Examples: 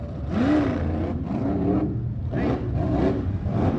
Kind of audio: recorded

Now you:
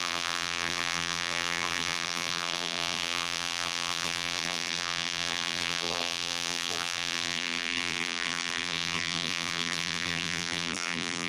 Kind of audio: remade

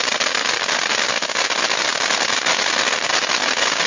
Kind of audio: recorded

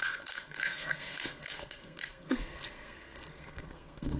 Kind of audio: remade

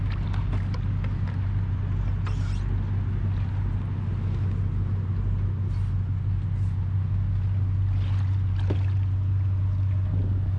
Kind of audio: recorded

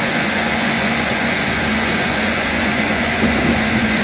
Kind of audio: remade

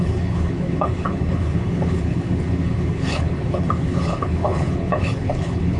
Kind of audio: remade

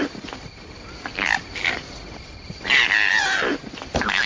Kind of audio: recorded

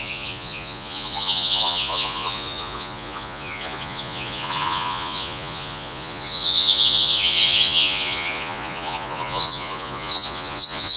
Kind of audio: remade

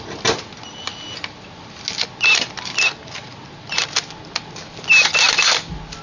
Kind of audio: recorded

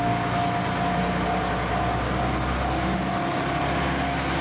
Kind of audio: recorded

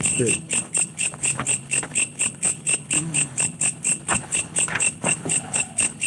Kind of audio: remade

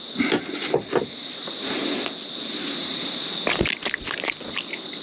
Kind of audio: recorded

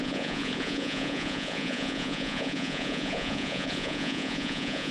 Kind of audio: remade